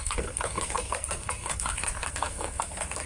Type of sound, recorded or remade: remade